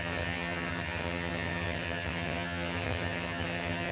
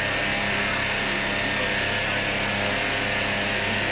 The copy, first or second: first